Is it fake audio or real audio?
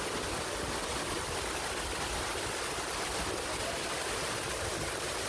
real